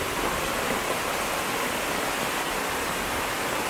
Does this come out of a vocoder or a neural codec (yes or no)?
no